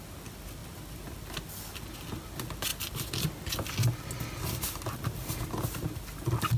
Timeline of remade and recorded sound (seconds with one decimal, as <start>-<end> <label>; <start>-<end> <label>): 0.0-6.6 recorded